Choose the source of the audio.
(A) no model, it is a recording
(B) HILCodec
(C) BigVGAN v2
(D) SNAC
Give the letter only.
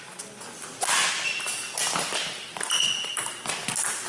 A